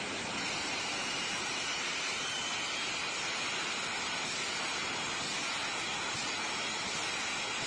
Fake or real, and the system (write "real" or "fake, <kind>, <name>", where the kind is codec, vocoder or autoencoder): real